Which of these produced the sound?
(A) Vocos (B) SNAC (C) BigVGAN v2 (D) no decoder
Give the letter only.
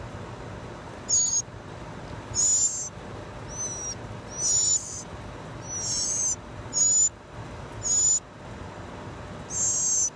D